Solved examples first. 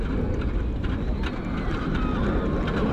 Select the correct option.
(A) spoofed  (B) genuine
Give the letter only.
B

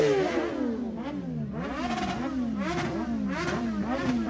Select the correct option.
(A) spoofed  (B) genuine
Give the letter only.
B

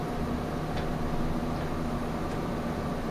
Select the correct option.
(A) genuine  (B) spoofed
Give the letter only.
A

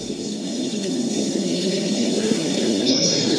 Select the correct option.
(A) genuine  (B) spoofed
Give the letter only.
B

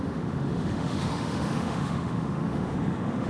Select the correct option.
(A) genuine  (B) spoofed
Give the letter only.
B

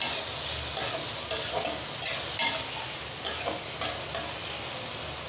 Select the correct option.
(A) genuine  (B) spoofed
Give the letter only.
A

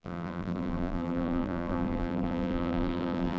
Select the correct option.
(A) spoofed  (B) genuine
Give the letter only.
A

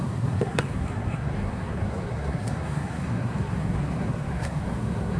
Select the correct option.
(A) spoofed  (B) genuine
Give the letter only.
A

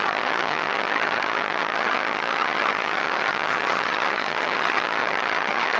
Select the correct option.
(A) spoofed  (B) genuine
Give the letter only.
A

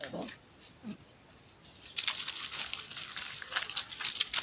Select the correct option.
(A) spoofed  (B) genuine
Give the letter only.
B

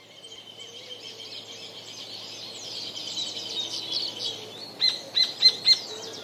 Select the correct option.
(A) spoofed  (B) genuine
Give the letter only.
B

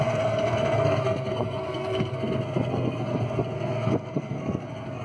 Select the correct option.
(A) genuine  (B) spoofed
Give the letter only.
B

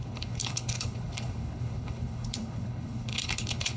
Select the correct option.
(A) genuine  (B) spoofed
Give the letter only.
B